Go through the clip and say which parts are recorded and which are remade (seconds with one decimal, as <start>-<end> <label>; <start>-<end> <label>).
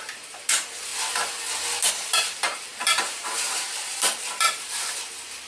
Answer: 0.0-0.9 remade; 0.9-1.9 recorded; 1.9-5.5 remade